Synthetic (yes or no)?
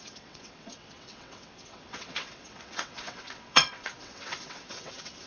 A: yes